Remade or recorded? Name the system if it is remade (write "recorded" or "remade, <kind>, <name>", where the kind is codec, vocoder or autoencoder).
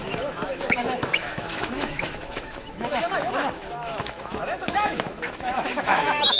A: remade, autoencoder, DAC-VAE